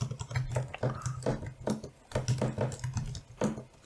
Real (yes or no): yes